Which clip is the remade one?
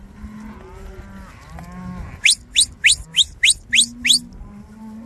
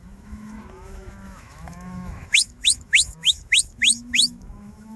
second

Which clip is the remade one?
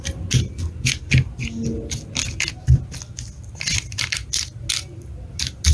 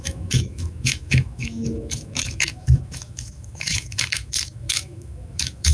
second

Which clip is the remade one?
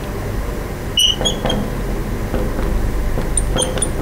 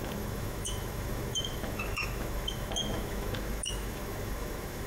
second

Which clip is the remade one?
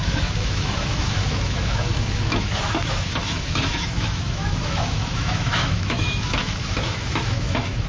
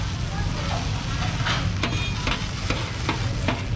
first